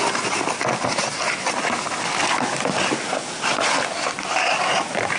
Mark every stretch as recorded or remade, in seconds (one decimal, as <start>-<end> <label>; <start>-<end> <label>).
0.0-5.2 recorded